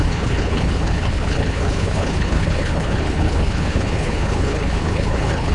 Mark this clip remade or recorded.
remade